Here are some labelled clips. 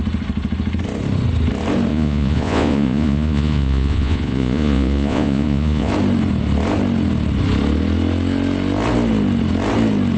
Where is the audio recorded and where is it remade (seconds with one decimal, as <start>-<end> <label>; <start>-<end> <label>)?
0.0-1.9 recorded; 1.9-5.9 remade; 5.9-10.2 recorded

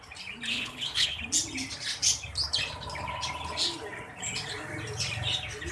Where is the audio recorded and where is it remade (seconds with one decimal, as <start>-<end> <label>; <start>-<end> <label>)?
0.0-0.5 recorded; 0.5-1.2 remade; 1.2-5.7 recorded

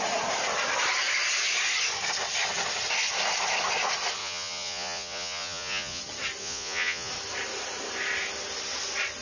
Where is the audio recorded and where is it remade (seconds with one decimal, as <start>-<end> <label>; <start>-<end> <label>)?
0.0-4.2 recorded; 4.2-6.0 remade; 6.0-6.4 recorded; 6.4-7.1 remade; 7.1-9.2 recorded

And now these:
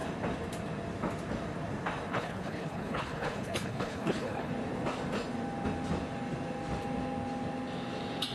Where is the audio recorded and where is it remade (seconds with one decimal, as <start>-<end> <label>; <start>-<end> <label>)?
0.0-2.1 recorded; 2.1-4.5 remade; 4.5-8.3 recorded

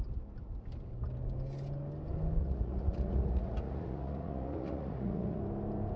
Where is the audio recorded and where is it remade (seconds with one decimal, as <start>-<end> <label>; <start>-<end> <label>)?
0.0-2.4 recorded; 2.4-5.4 remade; 5.4-6.0 recorded